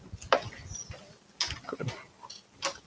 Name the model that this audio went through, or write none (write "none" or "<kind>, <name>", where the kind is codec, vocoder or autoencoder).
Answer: none